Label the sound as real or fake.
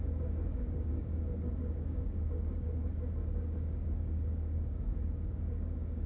fake